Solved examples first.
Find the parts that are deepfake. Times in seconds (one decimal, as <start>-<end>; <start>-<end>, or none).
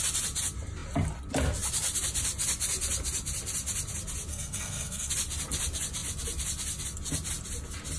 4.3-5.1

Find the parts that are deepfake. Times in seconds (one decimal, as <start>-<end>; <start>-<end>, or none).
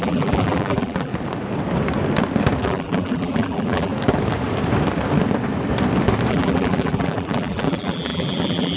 0.0-1.1; 2.6-3.9; 6.3-8.8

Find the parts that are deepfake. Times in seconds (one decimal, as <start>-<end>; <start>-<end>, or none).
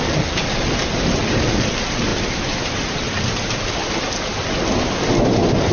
0.0-0.4; 1.1-2.1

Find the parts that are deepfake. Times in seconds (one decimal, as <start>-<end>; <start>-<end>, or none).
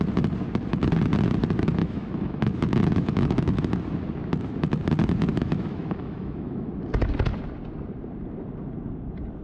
1.8-3.6; 5.3-6.7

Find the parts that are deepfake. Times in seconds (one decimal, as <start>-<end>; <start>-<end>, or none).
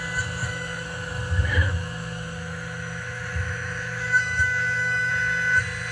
0.4-1.2; 1.6-5.1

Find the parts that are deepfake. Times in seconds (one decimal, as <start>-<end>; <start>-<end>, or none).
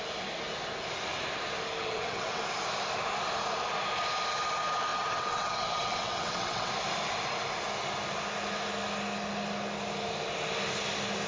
1.8-2.4; 4.9-6.7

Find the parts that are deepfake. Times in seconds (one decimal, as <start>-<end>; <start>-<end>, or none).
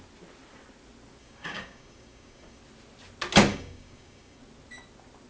1.2-2.6; 3.5-4.4